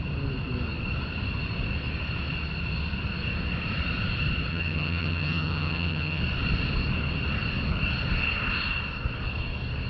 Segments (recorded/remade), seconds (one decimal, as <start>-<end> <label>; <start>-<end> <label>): 0.0-4.5 recorded; 4.5-6.2 remade; 6.2-9.9 recorded